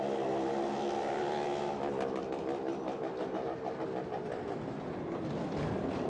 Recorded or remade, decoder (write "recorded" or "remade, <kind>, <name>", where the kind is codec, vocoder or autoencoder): recorded